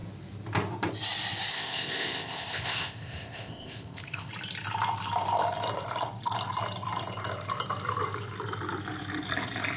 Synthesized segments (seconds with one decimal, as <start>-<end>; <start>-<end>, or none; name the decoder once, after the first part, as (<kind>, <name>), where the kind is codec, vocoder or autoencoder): 1.5-4.3 (codec, ZipCodec)

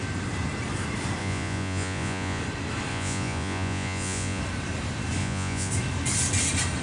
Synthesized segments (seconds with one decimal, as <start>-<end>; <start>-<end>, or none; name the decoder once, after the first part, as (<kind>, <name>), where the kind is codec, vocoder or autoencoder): 1.2-2.4 (vocoder, Vocos); 2.9-4.4; 5.2-5.7

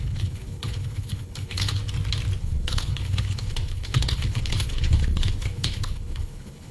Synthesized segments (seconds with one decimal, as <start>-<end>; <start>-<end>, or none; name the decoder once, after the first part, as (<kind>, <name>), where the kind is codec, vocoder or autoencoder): 0.0-1.8 (codec, HILCodec); 2.4-6.7